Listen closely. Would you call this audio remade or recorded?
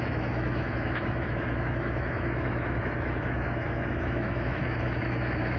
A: remade